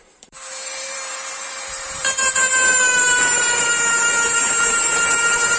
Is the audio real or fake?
fake